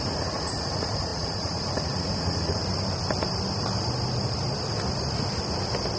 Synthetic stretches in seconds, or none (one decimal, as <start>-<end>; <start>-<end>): 0.0-2.6